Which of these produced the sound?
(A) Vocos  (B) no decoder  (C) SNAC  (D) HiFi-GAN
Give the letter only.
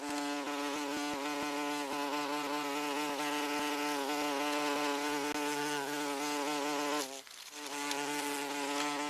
B